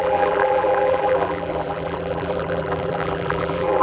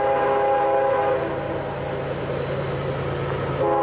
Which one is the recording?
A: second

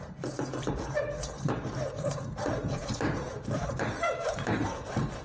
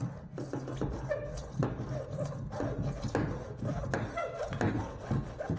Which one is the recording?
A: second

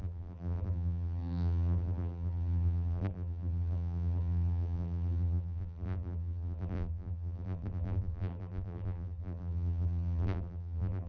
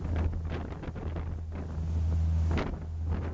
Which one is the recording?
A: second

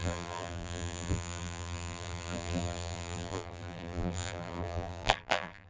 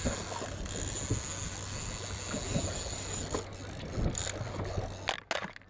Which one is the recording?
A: second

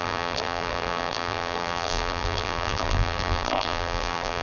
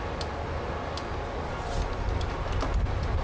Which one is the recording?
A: second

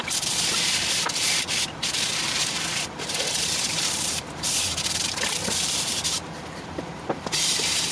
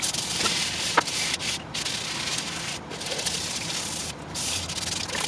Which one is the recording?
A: second